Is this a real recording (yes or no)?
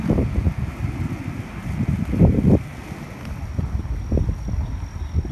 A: yes